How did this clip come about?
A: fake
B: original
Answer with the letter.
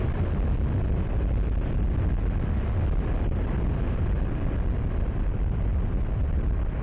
B